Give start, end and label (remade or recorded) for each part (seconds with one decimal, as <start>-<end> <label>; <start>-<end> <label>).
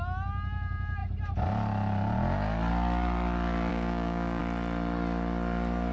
0.0-3.7 recorded; 3.7-4.4 remade; 4.4-5.9 recorded